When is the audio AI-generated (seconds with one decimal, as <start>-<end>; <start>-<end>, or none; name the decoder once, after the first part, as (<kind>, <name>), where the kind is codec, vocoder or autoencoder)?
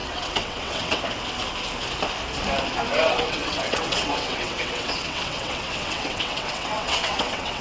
0.0-1.0 (vocoder, WaveNeXt); 2.9-7.6